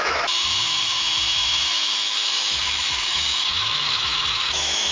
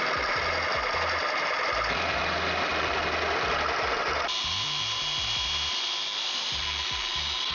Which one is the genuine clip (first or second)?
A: second